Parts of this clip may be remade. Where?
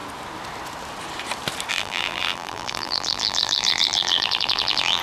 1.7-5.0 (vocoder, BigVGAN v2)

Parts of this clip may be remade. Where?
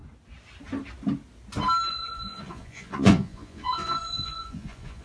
1.9-5.0 (vocoder, Vocos)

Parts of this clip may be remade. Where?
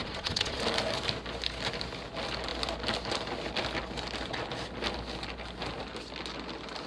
0.0-0.6 (vocoder, Vocos)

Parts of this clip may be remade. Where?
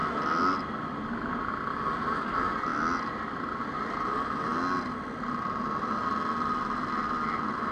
none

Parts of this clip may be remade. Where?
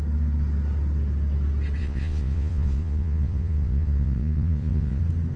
1.8-5.0 (vocoder, Vocos)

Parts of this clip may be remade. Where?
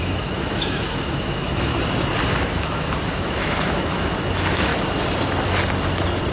0.0-1.7 (autoencoder, DAC-VAE); 2.4-4.7